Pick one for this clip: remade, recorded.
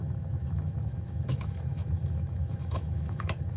remade